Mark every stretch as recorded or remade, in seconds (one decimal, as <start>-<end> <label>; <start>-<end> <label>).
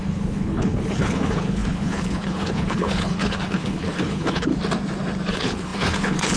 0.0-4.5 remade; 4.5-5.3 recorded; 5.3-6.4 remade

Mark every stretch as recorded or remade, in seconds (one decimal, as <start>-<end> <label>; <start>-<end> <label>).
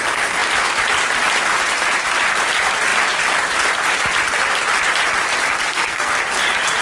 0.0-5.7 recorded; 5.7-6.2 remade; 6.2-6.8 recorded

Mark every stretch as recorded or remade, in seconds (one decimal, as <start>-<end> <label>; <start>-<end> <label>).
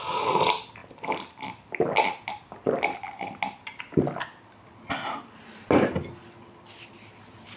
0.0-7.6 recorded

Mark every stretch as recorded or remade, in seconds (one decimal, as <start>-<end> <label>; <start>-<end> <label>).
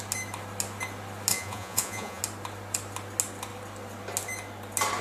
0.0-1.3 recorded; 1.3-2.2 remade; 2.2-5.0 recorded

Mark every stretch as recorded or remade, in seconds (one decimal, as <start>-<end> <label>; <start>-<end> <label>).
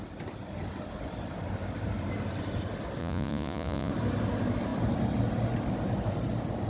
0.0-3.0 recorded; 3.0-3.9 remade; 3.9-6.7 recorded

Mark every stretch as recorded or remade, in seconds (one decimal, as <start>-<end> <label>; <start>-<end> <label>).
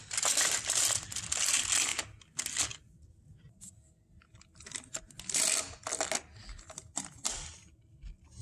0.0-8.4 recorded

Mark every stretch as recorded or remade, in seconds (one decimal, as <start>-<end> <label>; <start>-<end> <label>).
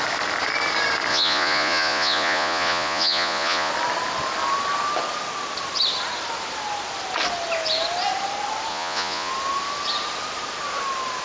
0.0-1.1 recorded; 1.1-3.7 remade; 3.7-8.7 recorded; 8.7-9.3 remade; 9.3-11.2 recorded